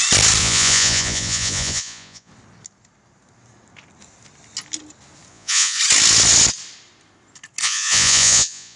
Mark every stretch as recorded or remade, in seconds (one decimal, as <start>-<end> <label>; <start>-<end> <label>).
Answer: 0.0-0.4 recorded; 0.4-2.3 remade; 2.3-5.3 recorded; 5.3-5.8 remade; 5.8-7.6 recorded; 7.6-8.8 remade